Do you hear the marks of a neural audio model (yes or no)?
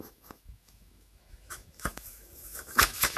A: yes